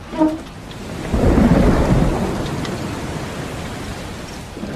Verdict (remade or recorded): recorded